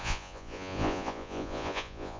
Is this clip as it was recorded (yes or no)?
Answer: no